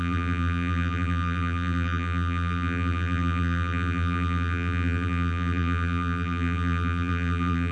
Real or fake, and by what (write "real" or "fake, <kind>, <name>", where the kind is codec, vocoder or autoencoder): fake, vocoder, BigVGAN v2